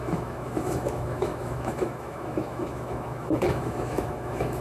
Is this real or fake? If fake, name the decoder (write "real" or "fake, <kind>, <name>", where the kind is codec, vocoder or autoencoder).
fake, autoencoder, DAC-VAE